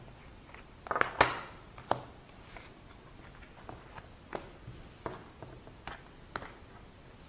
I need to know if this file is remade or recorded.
recorded